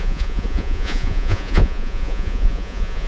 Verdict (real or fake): fake